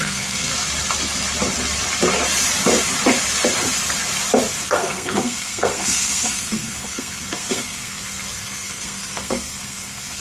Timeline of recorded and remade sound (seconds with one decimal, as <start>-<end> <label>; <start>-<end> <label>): 0.0-0.5 remade; 0.5-4.7 recorded; 4.7-10.2 remade